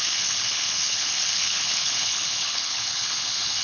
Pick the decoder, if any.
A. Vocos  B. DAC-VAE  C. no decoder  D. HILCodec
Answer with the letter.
D